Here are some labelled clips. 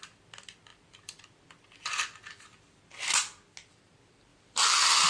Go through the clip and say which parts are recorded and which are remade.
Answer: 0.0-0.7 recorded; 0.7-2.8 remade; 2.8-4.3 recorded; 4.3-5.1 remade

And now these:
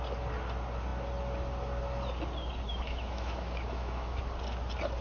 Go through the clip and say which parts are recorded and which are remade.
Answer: 0.0-2.7 recorded; 2.7-4.2 remade; 4.2-5.0 recorded

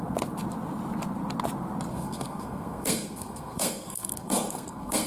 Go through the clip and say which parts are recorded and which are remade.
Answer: 0.0-1.9 recorded; 1.9-5.1 remade

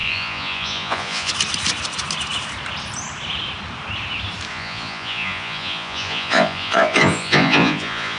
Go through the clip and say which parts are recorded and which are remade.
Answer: 0.0-1.3 remade; 1.3-4.5 recorded; 4.5-8.2 remade

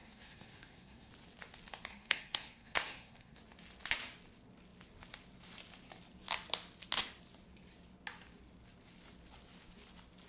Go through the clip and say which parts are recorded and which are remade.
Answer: 0.0-1.1 remade; 1.1-1.9 recorded; 1.9-3.4 remade; 3.4-10.3 recorded

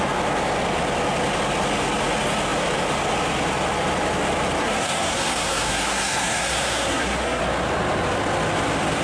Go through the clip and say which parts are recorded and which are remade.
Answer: 0.0-4.6 recorded; 4.6-7.4 remade; 7.4-9.0 recorded

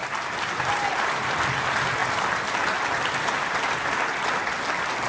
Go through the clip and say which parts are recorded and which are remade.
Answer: 0.0-5.1 recorded

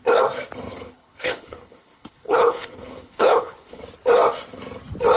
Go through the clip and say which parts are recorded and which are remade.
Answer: 0.0-0.7 recorded; 0.7-3.8 remade; 3.8-5.2 recorded